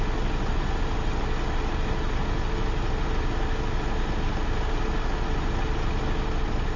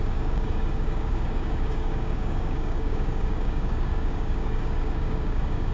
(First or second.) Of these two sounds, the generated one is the second